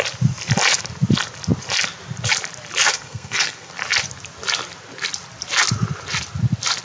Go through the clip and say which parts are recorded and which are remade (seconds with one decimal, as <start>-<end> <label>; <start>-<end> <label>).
0.0-2.9 recorded; 2.9-3.7 remade; 3.7-6.8 recorded